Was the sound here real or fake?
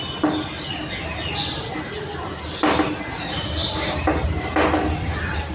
real